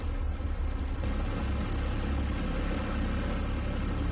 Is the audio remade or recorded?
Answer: recorded